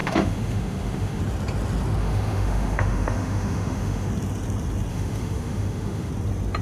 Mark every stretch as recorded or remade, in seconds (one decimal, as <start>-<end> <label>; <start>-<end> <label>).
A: 0.0-1.2 remade; 1.2-2.0 recorded; 2.0-4.1 remade; 4.1-4.9 recorded; 4.9-6.1 remade; 6.1-6.6 recorded